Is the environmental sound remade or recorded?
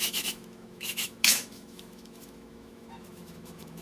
remade